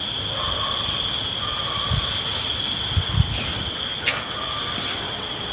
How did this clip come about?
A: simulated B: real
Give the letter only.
B